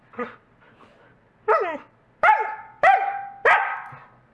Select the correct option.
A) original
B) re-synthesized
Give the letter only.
A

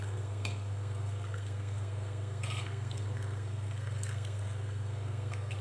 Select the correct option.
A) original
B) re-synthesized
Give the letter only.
B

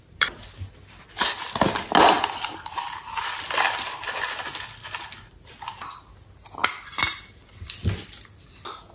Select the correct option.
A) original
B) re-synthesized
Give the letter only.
A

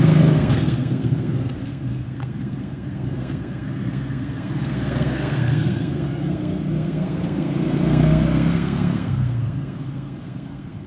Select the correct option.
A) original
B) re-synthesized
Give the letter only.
B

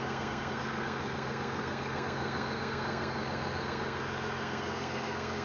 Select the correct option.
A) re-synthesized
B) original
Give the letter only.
A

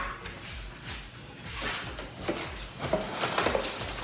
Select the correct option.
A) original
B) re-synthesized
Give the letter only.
A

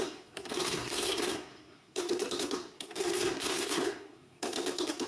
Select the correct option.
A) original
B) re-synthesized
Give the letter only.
B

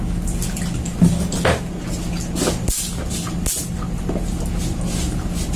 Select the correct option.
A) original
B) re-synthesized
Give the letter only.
A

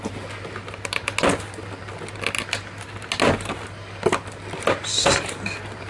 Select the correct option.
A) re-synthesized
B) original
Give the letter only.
B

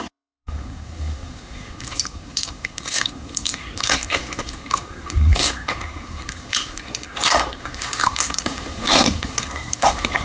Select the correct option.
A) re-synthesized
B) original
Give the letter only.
A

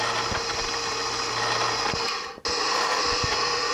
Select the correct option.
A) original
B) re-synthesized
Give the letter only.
A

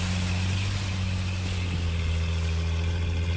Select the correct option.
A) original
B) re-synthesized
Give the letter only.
A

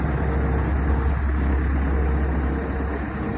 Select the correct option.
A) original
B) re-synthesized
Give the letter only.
A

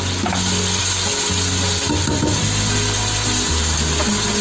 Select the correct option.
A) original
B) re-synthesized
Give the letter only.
A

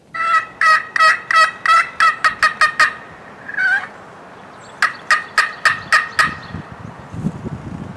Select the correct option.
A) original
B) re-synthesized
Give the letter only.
A